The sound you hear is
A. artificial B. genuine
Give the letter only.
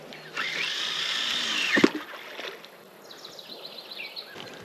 B